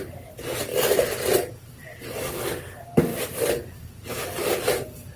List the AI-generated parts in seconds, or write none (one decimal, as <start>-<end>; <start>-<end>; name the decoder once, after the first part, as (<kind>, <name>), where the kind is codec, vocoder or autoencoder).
0.7-2.5 (vocoder, BigVGAN v2); 3.1-4.1